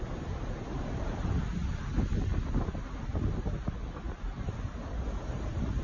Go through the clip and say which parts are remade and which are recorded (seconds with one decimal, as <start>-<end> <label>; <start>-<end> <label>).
0.0-5.8 recorded